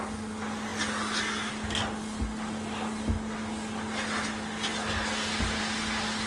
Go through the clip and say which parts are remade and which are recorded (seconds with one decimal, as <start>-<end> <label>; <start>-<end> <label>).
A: 0.0-6.3 recorded